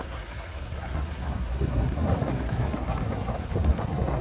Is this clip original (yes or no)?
no